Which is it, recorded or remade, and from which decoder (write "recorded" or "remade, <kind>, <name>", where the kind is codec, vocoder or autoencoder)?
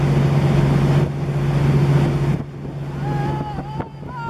recorded